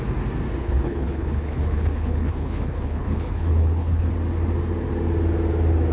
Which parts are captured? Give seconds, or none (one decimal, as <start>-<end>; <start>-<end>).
0.0-0.6; 4.1-5.9